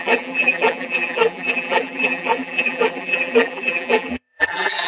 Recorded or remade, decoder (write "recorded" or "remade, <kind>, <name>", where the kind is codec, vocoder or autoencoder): remade, vocoder, BigVGAN v2